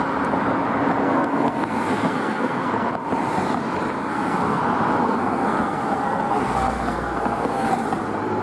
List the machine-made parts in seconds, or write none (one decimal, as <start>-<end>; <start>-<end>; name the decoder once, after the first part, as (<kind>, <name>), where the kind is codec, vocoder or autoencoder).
1.0-2.9 (codec, SNAC); 4.0-4.6; 5.0-7.7